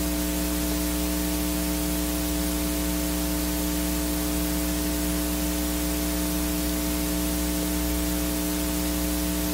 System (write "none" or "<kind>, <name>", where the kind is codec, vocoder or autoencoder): none